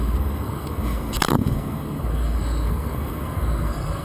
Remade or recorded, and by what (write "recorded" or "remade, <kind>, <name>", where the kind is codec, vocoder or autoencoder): remade, codec, SNAC